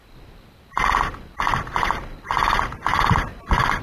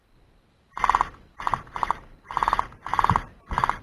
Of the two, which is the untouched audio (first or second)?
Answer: second